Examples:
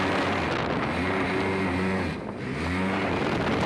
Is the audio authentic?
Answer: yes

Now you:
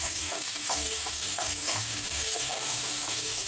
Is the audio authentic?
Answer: no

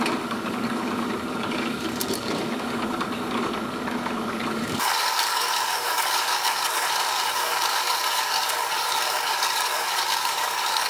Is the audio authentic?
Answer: no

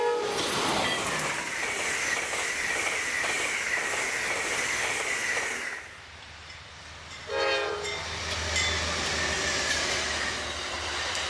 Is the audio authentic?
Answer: yes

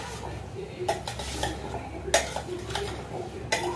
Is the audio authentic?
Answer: yes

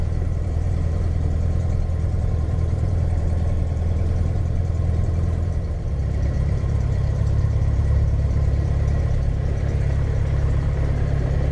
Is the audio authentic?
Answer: no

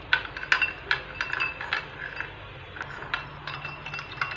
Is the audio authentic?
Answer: yes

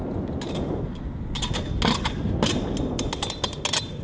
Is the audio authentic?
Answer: yes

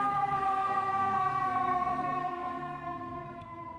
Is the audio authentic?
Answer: no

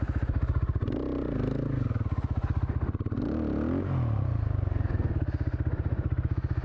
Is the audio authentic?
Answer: yes